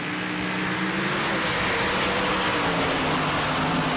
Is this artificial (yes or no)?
no